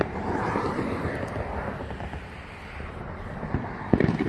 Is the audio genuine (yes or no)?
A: yes